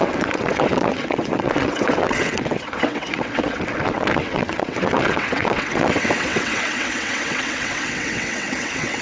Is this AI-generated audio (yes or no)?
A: yes